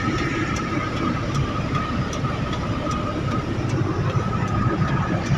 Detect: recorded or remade remade